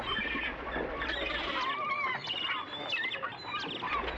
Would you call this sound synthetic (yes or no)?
no